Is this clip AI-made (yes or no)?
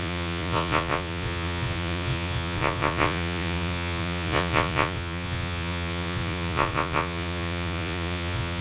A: yes